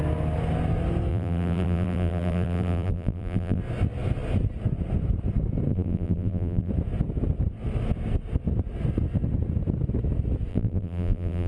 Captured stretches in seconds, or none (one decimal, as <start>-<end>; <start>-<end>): 0.0-1.1; 3.6-5.7; 6.7-10.5